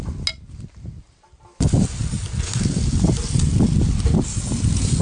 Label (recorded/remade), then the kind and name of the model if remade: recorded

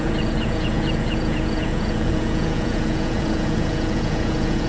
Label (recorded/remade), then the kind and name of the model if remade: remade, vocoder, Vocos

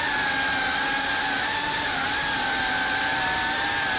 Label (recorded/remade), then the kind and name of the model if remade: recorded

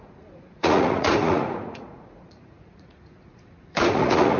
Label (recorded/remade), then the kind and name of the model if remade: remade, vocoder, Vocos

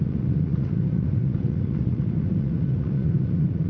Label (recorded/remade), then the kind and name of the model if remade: remade, vocoder, Vocos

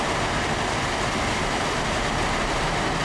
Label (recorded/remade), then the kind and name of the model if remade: recorded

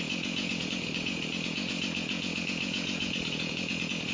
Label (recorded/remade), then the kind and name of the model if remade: remade, vocoder, Vocos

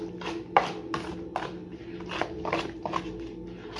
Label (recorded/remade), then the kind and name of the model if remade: recorded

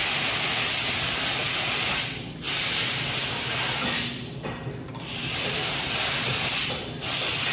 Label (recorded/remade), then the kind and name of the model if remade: recorded